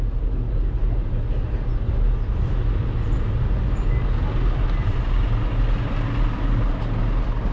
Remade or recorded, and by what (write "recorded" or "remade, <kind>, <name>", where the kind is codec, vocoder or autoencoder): recorded